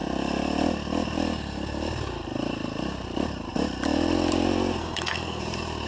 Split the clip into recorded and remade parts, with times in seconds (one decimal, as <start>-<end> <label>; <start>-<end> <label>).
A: 0.0-4.8 recorded; 4.8-5.4 remade; 5.4-5.9 recorded